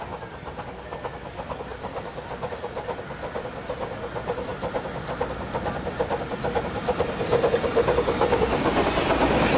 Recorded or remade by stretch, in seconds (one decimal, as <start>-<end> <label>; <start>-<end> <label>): 0.0-9.6 recorded